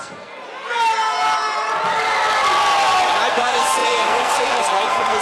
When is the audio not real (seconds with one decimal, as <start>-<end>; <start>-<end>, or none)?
0.0-0.4; 3.3-5.2